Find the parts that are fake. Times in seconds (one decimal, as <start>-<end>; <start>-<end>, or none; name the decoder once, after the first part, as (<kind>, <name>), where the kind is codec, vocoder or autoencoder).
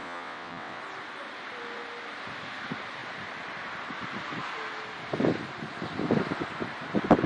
0.0-0.8 (vocoder, WaveNeXt)